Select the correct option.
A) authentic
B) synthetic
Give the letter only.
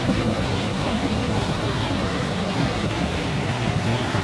B